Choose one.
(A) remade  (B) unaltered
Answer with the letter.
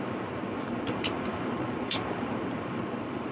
A